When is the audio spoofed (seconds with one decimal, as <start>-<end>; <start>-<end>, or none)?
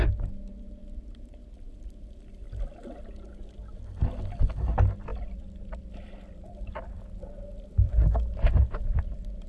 5.1-7.9